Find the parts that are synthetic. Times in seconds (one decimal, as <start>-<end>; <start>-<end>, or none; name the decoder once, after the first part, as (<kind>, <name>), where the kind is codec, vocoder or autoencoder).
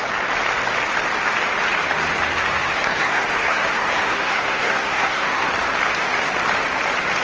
2.5-5.5 (codec, SNAC)